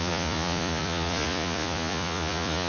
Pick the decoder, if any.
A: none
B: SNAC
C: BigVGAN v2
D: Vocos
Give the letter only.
D